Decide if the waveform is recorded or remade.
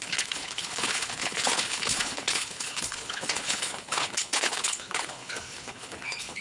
remade